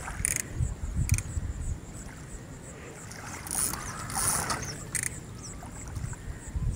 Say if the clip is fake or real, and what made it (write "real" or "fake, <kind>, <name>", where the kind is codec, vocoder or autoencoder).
real